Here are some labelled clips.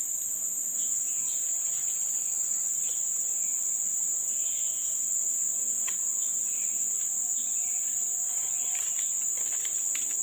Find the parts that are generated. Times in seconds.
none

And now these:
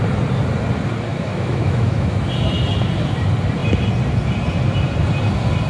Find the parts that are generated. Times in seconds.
1.1-2.2 (autoencoder, DAC-VAE)

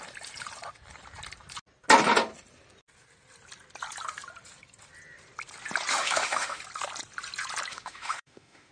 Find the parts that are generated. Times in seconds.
5.9-6.6 (autoencoder, DAC-VAE); 7.7-8.7

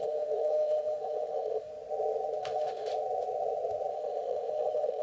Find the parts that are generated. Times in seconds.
0.0-1.7 (autoencoder, DAC-VAE); 2.4-2.9; 3.9-5.0

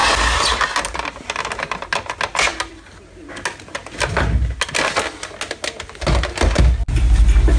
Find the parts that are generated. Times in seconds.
none

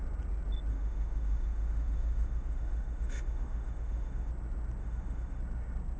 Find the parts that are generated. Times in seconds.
0.7-4.3 (autoencoder, DAC-VAE); 4.8-5.4

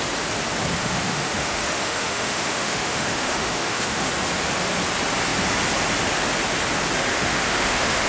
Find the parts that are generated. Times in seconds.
0.8-4.1 (autoencoder, DAC-VAE); 7.1-8.1